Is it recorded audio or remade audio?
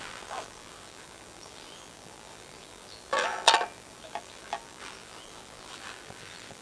remade